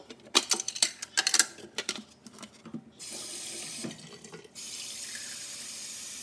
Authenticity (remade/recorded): recorded